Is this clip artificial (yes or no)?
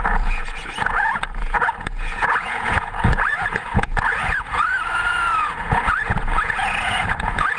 yes